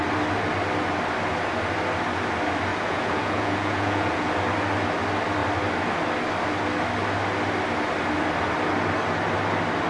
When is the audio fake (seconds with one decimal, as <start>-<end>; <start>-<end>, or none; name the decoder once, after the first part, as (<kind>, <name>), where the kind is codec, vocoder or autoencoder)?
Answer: 2.7-4.3 (vocoder, Vocos)